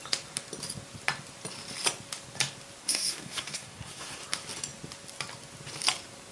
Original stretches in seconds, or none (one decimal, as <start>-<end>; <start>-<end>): 0.0-2.8; 4.2-6.3